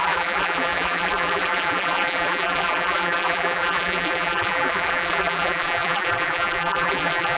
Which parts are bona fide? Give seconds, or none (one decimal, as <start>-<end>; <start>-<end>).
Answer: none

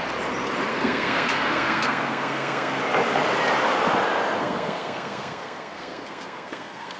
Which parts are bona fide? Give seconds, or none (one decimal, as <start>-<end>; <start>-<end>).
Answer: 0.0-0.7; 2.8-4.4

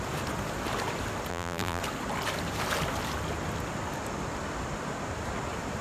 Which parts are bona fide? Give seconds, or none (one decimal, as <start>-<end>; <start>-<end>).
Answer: 0.0-1.3; 1.8-5.8